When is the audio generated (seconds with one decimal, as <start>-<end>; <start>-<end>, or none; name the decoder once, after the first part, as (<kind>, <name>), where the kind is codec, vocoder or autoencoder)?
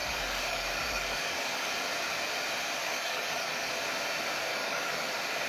0.0-1.7 (codec, DAC); 2.8-3.7; 4.5-5.1